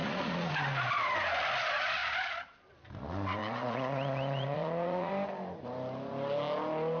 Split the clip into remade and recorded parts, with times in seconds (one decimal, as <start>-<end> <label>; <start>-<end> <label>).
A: 0.0-0.5 remade; 0.5-3.4 recorded; 3.4-5.1 remade; 5.1-7.0 recorded